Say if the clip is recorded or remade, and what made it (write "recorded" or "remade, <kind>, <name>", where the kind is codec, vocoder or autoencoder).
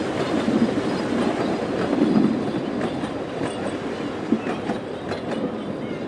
remade, vocoder, BigVGAN v2